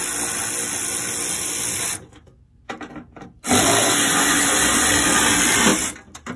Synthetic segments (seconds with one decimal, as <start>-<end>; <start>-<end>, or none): 3.8-4.9